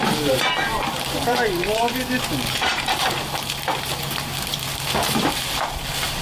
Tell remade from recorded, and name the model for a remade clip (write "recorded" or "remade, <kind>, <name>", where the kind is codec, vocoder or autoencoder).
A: remade, vocoder, BigVGAN v2